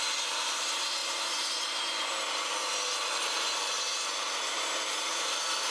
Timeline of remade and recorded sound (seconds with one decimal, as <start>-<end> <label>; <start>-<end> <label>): 0.0-1.0 remade; 1.0-4.4 recorded; 4.4-5.7 remade